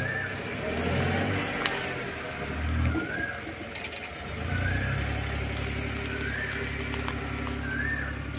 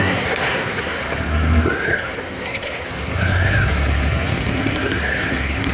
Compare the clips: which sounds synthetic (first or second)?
second